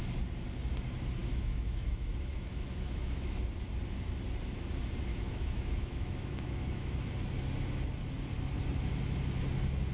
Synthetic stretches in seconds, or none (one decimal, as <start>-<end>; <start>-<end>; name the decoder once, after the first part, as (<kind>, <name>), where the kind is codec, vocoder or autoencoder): 1.2-3.4 (autoencoder, DAC-VAE); 5.1-7.1